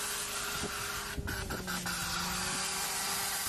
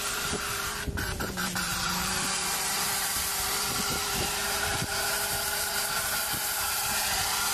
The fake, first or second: second